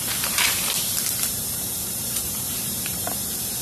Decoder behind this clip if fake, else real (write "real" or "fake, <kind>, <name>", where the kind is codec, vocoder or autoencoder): fake, vocoder, BigVGAN v2